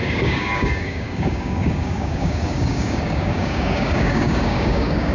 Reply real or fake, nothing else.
fake